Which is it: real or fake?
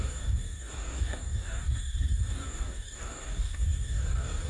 fake